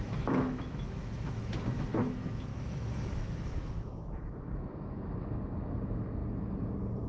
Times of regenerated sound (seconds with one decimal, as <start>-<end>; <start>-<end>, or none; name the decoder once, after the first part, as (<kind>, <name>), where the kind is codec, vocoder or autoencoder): 0.0-6.2 (autoencoder, DAC-VAE)